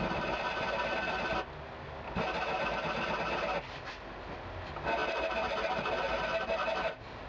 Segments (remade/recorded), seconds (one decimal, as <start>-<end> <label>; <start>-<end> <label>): 0.0-7.3 recorded

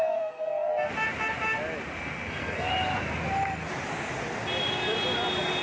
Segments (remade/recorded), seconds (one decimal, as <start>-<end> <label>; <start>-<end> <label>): 0.0-0.7 remade; 0.7-2.0 recorded; 2.0-2.7 remade; 2.7-5.6 recorded

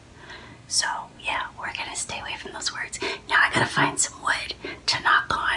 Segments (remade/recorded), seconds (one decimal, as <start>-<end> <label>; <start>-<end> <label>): 0.0-0.5 recorded; 0.5-1.2 remade; 1.2-5.6 recorded

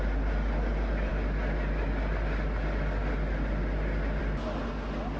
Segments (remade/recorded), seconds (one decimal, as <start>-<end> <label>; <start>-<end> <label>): 0.0-5.2 recorded

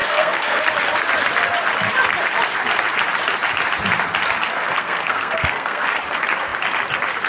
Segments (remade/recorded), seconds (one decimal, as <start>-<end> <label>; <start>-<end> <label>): 0.0-0.6 remade; 0.6-4.5 recorded; 4.5-5.9 remade; 5.9-7.3 recorded

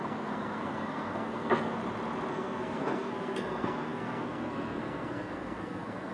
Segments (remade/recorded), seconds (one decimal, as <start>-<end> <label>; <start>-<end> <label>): 0.0-1.8 remade; 1.8-2.3 recorded; 2.3-6.1 remade